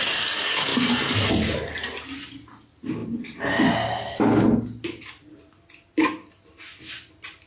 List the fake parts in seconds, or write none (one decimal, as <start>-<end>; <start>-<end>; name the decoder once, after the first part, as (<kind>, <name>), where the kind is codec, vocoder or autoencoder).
none